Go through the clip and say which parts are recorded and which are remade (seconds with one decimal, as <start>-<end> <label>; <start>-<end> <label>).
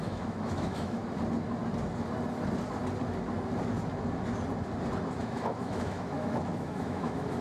0.0-1.0 remade; 1.0-5.2 recorded; 5.2-7.4 remade